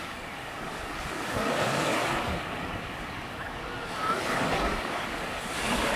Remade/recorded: remade